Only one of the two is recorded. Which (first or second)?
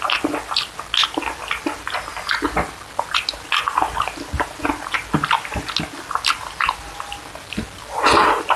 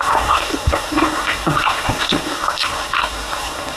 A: first